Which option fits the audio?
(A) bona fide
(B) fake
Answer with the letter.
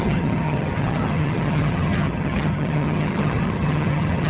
B